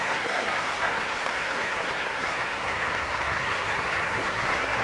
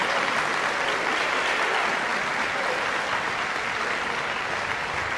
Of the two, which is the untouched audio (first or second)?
second